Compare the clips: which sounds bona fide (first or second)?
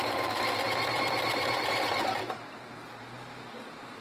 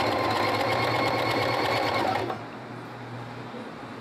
second